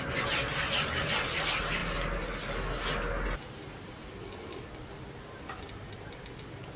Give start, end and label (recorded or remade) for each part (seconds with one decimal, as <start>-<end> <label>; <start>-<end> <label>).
0.0-6.8 recorded